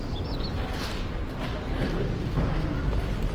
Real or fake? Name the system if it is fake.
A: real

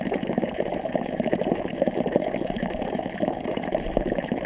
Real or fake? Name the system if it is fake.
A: fake, autoencoder, DAC-VAE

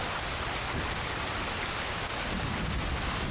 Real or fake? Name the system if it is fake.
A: real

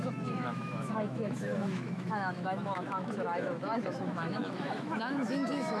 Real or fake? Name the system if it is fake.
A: fake, autoencoder, DAC-VAE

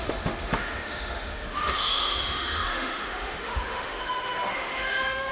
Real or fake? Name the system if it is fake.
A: fake, autoencoder, DAC-VAE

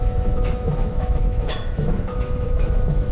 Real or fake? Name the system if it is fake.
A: fake, autoencoder, DAC-VAE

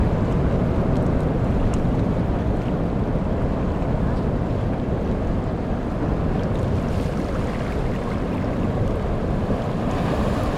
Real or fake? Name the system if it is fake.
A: real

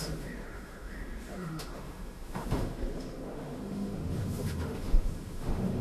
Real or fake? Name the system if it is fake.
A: fake, autoencoder, DAC-VAE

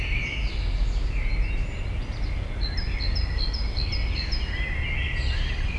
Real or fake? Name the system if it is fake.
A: real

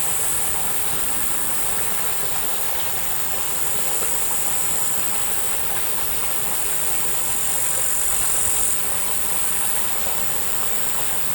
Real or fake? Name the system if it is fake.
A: real